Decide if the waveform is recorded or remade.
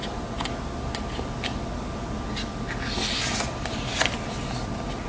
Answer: recorded